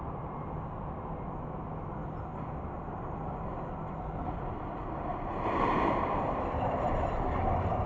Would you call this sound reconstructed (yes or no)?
no